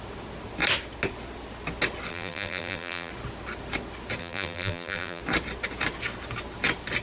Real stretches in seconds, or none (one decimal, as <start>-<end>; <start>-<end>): 0.0-2.1; 3.1-4.2; 5.2-7.0